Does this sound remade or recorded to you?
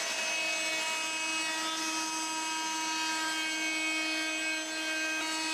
recorded